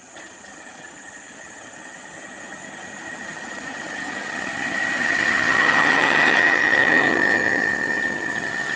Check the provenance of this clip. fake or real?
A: fake